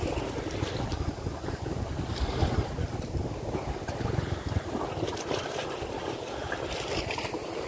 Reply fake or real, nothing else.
real